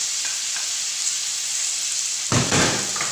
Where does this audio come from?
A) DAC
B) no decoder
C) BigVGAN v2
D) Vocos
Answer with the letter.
B